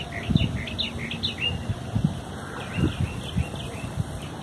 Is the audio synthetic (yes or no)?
no